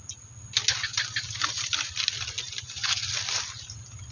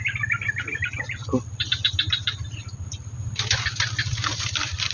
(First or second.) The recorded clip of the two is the first